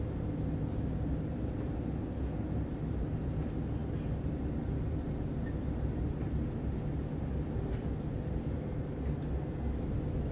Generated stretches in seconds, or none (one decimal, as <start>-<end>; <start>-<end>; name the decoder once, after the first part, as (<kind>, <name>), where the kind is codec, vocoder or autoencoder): none